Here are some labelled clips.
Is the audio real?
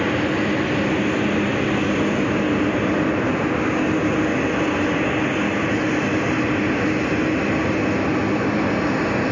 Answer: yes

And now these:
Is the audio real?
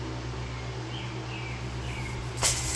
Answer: yes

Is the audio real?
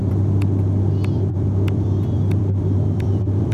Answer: no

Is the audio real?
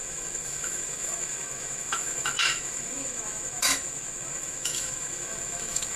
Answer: no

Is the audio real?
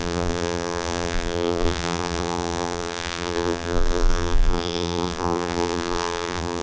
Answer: no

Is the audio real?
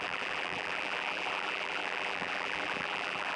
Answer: no